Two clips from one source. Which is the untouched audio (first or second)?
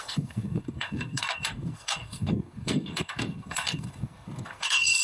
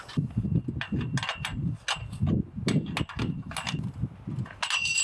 second